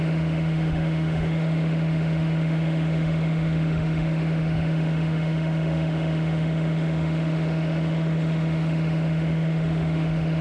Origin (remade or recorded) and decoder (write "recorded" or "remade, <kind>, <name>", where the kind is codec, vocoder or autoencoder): remade, autoencoder, DAC-VAE